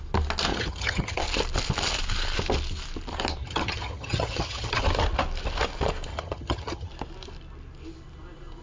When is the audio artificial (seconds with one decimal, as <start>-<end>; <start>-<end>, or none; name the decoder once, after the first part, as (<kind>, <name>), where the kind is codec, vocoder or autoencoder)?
0.5-1.2 (vocoder, HiFi-GAN); 3.4-4.8; 6.1-6.9